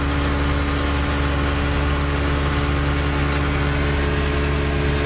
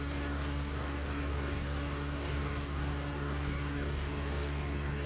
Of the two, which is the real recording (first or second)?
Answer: first